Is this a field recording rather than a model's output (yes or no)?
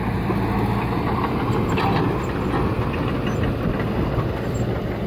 yes